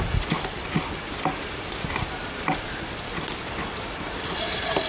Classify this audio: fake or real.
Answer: fake